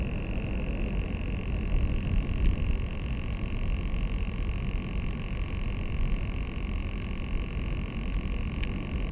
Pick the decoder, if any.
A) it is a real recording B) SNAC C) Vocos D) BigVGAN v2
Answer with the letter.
A